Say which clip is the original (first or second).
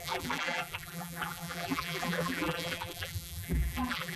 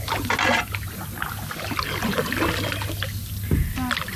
second